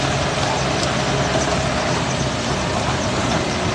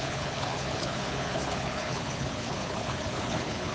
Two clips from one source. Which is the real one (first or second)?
first